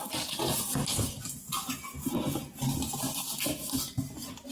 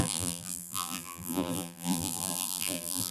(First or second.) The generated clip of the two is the second